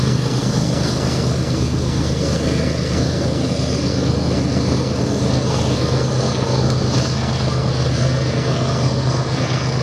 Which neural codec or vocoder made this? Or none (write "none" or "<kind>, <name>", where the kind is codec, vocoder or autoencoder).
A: codec, SNAC